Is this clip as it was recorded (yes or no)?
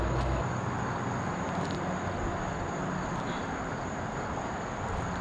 yes